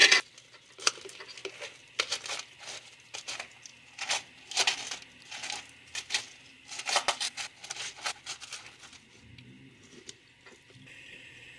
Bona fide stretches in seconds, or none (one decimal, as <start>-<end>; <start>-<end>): 0.0-11.6